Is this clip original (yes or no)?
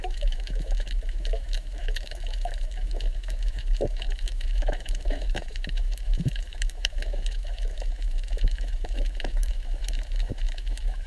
no